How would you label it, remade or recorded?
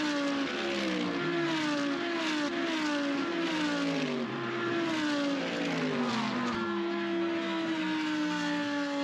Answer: recorded